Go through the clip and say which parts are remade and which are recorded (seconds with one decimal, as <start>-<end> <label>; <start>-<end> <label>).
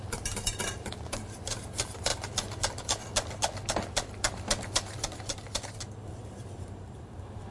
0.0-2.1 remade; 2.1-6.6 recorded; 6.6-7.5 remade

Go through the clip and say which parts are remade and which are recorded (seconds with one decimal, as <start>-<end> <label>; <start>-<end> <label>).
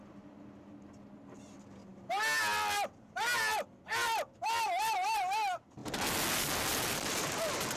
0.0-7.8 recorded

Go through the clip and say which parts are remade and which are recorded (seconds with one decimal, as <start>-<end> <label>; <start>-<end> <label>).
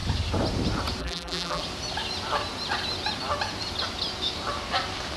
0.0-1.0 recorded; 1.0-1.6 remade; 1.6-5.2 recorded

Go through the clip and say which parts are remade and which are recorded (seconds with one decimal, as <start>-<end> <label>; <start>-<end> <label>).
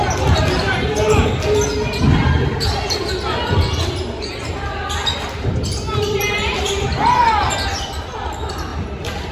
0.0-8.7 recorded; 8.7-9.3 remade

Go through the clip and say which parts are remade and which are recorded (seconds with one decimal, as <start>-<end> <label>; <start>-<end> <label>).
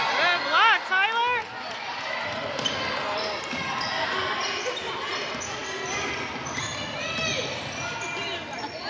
0.0-8.9 recorded